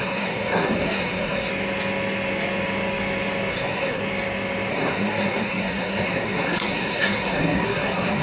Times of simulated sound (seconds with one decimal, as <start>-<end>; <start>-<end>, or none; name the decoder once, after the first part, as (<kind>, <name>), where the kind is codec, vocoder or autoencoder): 0.0-1.5 (codec, SNAC); 3.5-4.0; 4.7-8.2